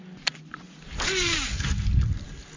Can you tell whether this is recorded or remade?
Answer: recorded